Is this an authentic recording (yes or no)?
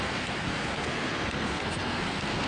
no